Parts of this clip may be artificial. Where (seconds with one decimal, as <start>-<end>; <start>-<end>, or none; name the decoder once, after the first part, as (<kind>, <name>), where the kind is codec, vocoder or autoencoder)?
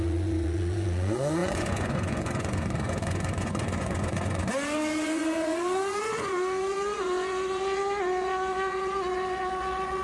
0.0-10.0 (vocoder, Vocos)